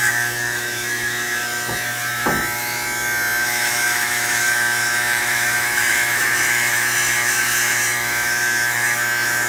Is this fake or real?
fake